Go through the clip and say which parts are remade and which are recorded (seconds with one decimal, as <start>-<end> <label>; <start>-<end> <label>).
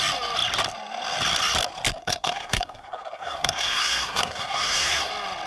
0.0-2.0 recorded; 2.0-5.1 remade; 5.1-5.5 recorded